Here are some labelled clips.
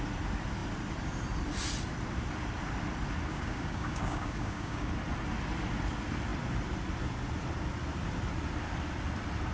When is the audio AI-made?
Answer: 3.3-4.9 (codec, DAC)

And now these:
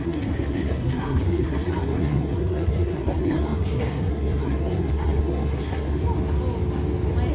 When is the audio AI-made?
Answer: 0.0-6.0 (codec, SNAC)

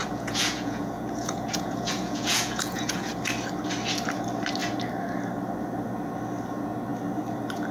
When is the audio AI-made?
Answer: 0.0-3.1 (vocoder, Vocos)

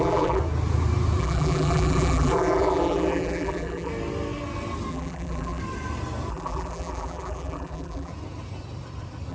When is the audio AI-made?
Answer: 0.0-0.4 (vocoder, BigVGAN v2); 1.2-3.9; 4.9-5.6; 6.3-8.1

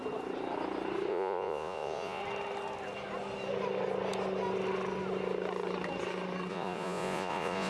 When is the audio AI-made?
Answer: 1.1-2.2 (vocoder, Vocos); 6.5-7.7

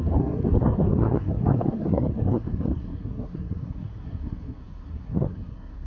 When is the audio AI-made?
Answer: 0.0-5.9 (codec, SNAC)

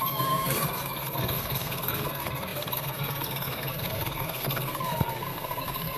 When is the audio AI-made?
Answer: 0.0-6.0 (codec, SNAC)

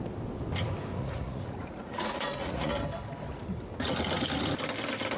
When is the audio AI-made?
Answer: 0.9-2.7 (vocoder, Vocos)